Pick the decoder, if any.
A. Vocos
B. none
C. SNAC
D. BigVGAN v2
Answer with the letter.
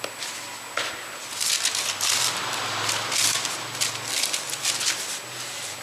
B